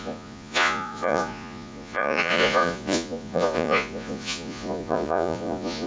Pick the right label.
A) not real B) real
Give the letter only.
A